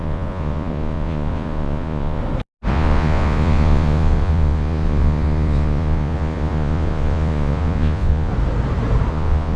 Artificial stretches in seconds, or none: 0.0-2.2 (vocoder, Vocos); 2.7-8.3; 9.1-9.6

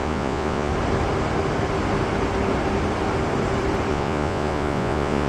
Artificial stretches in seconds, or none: 0.0-0.7 (vocoder, Vocos); 3.9-5.3

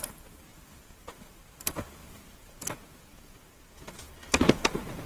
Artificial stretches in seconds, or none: 0.5-1.4 (vocoder, Vocos); 2.0-5.1